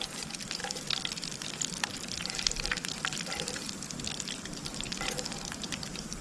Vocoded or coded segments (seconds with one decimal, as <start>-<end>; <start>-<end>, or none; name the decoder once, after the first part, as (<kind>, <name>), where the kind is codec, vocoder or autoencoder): 0.0-4.7 (vocoder, BigVGAN v2); 5.5-6.2